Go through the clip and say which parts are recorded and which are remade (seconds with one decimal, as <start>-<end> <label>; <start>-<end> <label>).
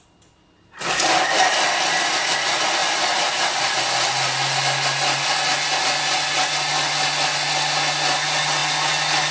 0.0-9.3 recorded